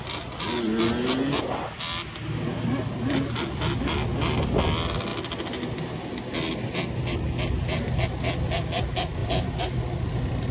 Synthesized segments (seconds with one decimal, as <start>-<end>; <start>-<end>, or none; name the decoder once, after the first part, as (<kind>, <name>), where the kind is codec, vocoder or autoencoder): none